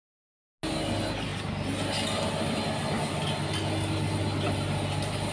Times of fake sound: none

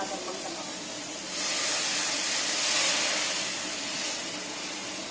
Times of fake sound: none